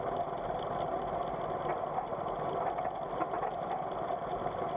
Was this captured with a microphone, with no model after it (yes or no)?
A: yes